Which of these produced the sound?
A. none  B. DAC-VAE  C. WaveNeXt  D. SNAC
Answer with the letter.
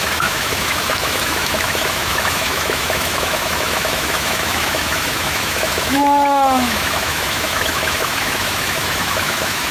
B